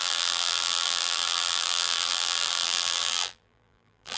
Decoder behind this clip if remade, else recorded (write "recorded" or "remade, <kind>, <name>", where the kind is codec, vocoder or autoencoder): remade, vocoder, BigVGAN v2